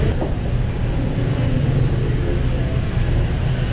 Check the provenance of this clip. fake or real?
real